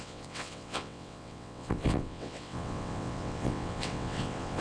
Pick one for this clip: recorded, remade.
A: remade